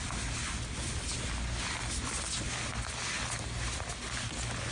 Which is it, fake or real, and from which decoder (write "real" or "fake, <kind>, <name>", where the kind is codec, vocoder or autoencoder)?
real